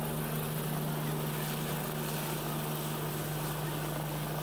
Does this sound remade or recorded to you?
recorded